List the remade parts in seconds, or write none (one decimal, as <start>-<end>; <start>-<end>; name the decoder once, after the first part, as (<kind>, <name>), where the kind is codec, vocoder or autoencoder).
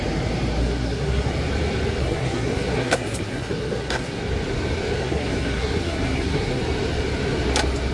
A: 0.6-1.3 (codec, SNAC); 2.0-4.2; 5.0-6.6